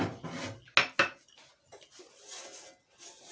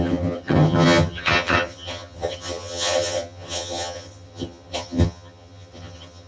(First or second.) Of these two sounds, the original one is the first